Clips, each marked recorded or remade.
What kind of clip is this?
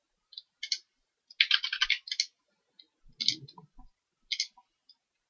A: recorded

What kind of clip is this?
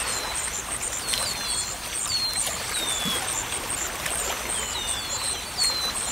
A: recorded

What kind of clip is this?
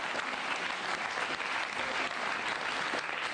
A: recorded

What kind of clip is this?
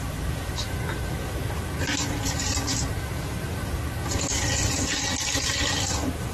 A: recorded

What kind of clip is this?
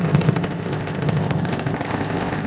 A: remade